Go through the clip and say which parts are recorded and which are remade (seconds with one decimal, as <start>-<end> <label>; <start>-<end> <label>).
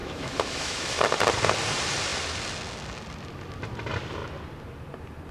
0.0-1.0 remade; 1.0-5.3 recorded